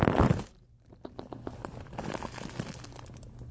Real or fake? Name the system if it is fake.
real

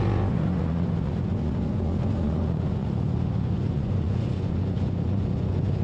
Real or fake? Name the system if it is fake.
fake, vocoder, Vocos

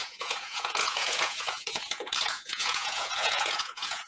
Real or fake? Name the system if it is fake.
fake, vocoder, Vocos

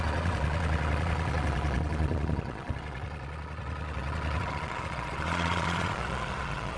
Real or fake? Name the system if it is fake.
fake, vocoder, Vocos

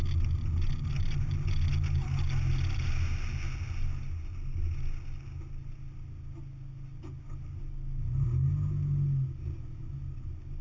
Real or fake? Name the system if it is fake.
real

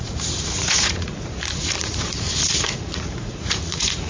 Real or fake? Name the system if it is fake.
fake, vocoder, Vocos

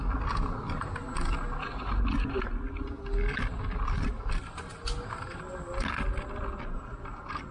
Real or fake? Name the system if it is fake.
real